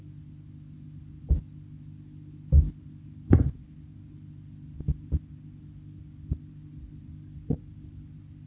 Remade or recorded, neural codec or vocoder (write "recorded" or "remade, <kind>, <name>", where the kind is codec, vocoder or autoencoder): recorded